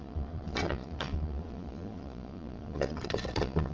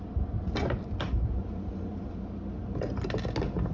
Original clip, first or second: second